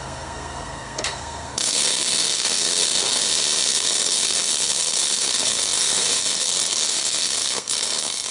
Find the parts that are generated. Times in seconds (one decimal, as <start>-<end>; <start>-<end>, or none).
0.0-3.2; 3.7-8.3